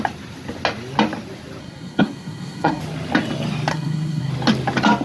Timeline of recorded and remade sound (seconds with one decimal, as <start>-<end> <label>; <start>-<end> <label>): 0.0-1.6 recorded; 1.6-2.8 remade; 2.8-3.7 recorded; 3.7-4.3 remade; 4.3-5.0 recorded